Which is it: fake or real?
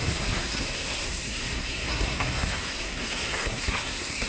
fake